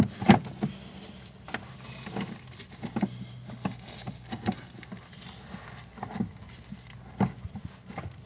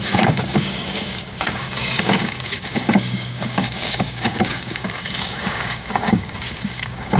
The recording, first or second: first